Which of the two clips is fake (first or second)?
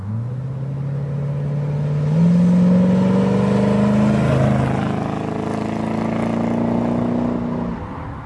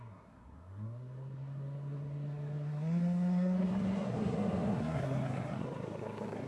second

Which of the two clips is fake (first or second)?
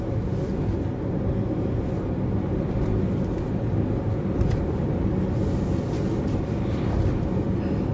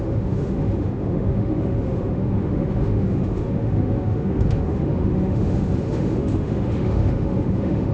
second